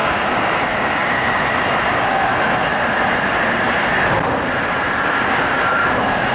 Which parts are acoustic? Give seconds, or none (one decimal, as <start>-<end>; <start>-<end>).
1.4-6.3